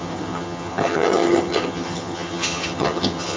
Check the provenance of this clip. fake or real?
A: fake